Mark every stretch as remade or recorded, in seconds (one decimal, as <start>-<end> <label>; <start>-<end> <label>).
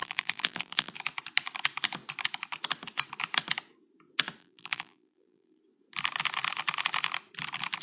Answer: 0.0-0.9 remade; 0.9-4.4 recorded; 4.4-5.6 remade; 5.6-7.8 recorded